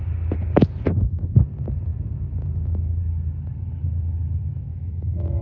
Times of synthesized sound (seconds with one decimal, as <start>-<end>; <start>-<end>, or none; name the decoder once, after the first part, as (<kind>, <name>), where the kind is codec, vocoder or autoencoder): 4.7-5.4 (autoencoder, DAC-VAE)